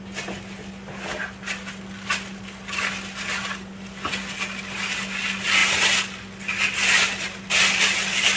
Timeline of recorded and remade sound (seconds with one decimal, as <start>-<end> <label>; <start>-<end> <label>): 0.0-8.4 recorded